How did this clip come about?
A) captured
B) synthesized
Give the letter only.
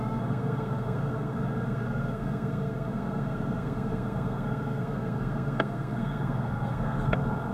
B